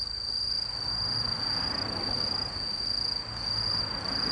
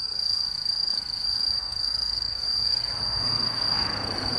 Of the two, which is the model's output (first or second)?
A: second